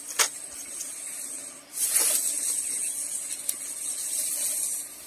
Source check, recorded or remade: recorded